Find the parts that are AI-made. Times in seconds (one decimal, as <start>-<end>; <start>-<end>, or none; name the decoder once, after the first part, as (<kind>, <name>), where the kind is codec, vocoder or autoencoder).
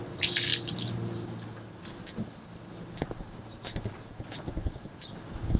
none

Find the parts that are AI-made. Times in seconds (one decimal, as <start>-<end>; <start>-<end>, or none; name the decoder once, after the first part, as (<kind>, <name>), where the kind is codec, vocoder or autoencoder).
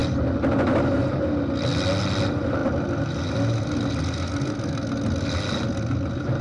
none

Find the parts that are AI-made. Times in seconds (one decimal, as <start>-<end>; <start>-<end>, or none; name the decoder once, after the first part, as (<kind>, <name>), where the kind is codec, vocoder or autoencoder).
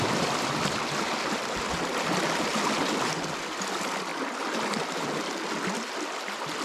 none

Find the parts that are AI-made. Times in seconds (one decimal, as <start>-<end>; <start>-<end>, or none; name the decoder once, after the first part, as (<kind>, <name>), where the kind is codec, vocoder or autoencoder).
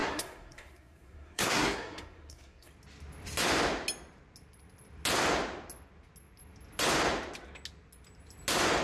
0.0-2.7 (codec, SNAC)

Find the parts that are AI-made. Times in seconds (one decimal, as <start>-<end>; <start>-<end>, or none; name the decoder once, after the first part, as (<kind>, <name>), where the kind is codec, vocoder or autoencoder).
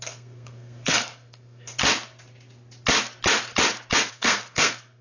0.0-1.8 (codec, SNAC); 4.1-5.0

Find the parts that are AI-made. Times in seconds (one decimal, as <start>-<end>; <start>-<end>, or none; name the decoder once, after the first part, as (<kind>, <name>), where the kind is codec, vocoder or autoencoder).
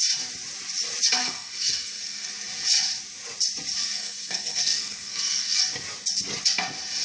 1.2-2.3 (codec, SNAC); 3.8-5.6